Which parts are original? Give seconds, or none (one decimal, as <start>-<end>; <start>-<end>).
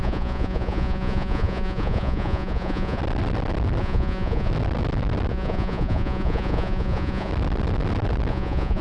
3.0-3.8; 4.5-5.3; 7.3-8.3